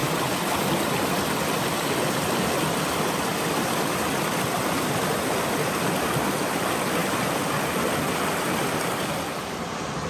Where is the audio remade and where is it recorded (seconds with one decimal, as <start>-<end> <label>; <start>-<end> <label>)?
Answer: 0.0-10.1 recorded